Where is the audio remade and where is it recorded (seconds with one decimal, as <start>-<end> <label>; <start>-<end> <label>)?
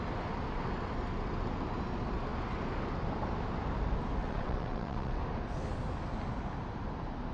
0.0-4.2 recorded; 4.2-5.2 remade; 5.2-7.3 recorded